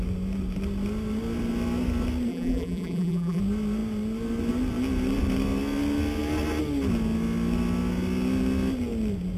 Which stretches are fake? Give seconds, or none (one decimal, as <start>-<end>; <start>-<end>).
2.3-3.4